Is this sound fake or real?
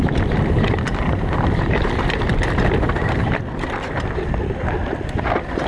fake